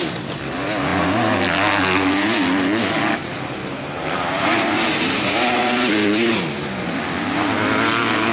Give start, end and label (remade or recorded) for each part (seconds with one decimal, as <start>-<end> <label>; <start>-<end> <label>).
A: 0.0-3.2 recorded; 3.2-7.0 remade; 7.0-8.3 recorded